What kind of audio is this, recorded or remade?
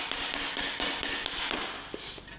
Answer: recorded